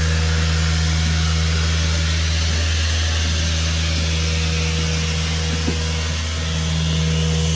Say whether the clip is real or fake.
real